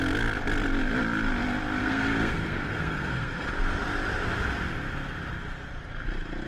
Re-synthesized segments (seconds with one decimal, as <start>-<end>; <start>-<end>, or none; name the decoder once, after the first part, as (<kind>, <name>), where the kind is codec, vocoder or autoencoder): 1.8-3.5 (codec, SNAC)